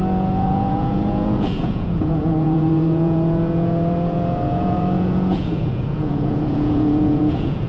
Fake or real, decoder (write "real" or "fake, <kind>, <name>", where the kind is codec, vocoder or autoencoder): fake, vocoder, Vocos